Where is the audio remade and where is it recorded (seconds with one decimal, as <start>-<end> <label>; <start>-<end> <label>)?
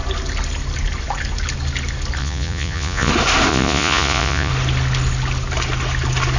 0.0-2.2 recorded; 2.2-3.1 remade; 3.1-3.5 recorded; 3.5-4.5 remade; 4.5-6.4 recorded